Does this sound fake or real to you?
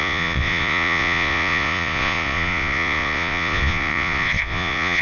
fake